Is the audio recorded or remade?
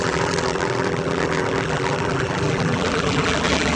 remade